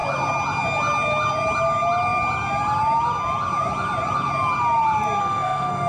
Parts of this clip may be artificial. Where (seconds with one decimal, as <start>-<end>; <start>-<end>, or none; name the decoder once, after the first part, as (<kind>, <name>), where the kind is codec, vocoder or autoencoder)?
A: 5.2-5.9 (codec, SNAC)